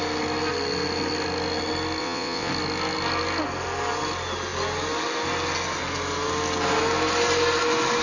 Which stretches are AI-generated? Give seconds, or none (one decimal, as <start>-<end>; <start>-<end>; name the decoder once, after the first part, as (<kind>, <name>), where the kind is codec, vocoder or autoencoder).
2.0-2.5 (vocoder, WaveNeXt)